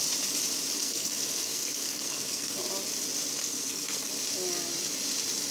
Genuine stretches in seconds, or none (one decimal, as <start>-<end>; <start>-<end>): 0.0-0.8; 2.6-3.4; 4.1-5.5